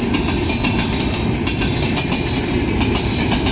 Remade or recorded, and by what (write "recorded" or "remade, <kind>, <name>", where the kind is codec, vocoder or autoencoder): recorded